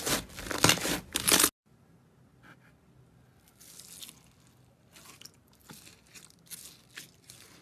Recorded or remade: recorded